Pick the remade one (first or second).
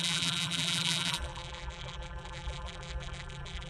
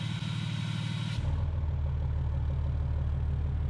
first